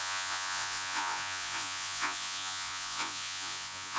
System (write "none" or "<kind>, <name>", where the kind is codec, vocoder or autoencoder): vocoder, Vocos